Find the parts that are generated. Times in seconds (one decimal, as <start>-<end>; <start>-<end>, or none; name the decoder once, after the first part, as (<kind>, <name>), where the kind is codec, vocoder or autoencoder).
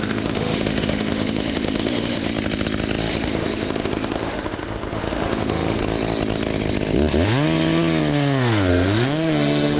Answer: 0.0-2.3 (autoencoder, DAC-VAE); 3.1-5.8; 8.7-9.8